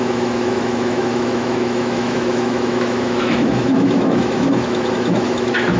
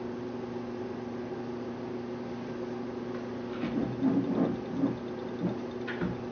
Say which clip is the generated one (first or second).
first